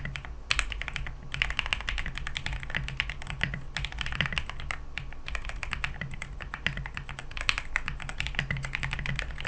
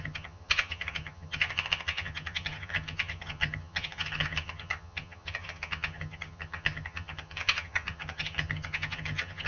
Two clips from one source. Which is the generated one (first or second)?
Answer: second